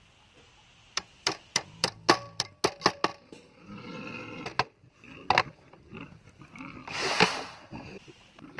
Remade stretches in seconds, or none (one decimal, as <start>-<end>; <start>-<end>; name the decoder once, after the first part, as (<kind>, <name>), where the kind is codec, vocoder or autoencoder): 0.8-2.5 (vocoder, BigVGAN v2); 6.8-8.6